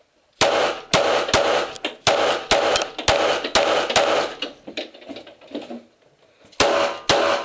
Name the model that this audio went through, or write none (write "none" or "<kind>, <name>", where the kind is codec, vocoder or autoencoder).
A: none